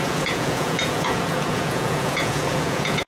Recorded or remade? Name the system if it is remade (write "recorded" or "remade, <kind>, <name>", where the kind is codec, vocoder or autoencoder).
remade, vocoder, Vocos